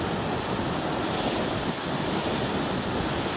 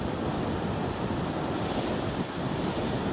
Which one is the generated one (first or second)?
first